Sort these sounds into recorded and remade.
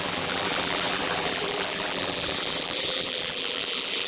remade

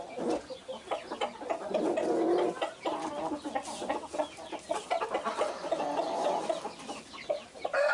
recorded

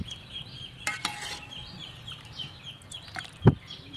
recorded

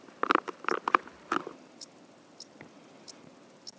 remade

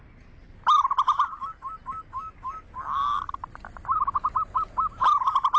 recorded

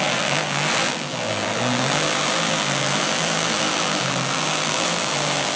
remade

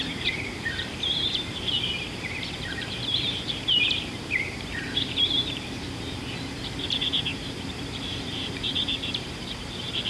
remade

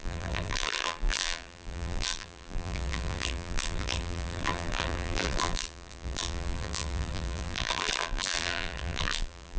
remade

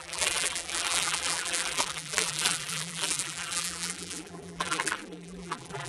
remade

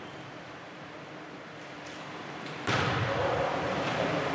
remade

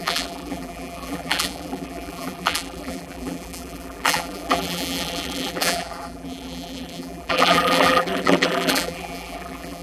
remade